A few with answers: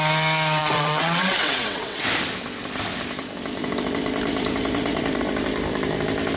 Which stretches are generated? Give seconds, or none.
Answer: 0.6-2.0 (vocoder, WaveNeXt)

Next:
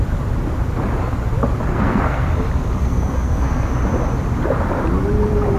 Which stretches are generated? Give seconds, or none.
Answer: 1.7-2.3 (codec, SNAC); 2.8-3.7

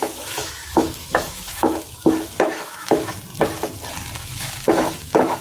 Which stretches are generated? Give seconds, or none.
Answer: 0.0-3.2 (autoencoder, DAC-VAE); 4.2-5.4

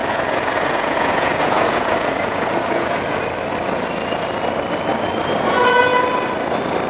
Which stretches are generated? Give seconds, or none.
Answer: 0.0-3.2 (vocoder, Vocos)

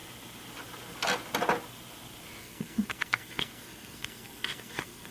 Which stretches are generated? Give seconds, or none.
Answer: 2.4-5.1 (codec, SNAC)

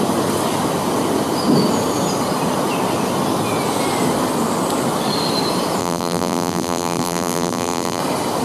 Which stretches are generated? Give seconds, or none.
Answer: 5.8-8.0 (vocoder, BigVGAN v2)